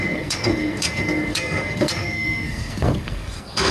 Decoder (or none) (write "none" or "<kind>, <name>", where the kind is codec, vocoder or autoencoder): codec, SNAC